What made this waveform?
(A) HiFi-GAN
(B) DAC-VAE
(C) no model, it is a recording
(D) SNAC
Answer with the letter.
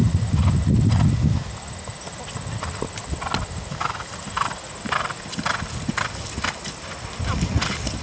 C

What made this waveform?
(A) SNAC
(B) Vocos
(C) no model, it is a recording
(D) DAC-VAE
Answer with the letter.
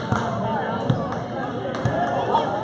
C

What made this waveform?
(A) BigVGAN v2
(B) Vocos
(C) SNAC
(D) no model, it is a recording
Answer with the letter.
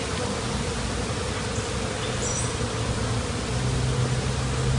D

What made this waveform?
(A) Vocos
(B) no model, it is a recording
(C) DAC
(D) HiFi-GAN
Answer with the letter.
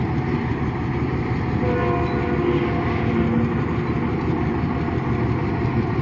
B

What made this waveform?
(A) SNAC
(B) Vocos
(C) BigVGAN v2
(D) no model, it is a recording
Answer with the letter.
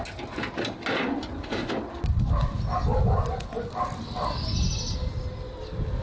D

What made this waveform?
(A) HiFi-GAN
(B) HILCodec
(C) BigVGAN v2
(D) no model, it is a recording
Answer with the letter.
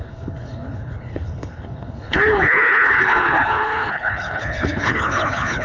B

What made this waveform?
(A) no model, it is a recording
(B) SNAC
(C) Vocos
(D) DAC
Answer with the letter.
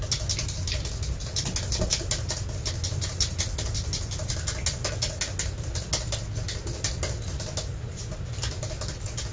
A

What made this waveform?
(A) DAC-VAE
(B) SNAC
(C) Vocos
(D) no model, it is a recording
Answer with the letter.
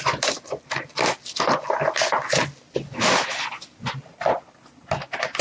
D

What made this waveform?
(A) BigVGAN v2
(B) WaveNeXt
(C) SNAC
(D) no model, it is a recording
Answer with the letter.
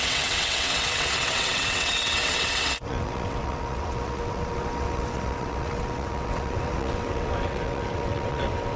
B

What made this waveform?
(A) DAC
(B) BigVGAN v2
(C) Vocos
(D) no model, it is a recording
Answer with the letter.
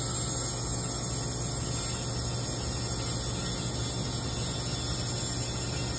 D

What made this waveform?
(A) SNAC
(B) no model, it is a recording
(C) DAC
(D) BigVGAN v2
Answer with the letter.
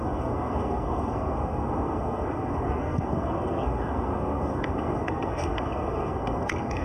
A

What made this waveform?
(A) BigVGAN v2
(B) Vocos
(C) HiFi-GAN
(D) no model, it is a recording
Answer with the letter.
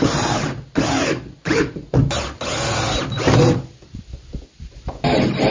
D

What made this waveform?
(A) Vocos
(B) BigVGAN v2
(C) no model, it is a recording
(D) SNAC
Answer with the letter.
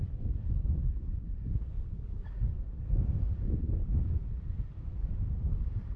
B